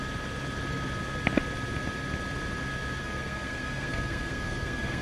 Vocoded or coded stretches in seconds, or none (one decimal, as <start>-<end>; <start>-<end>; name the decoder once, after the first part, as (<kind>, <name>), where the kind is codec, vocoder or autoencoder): 3.0-5.0 (codec, SNAC)